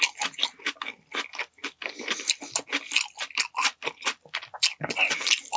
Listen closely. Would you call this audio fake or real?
real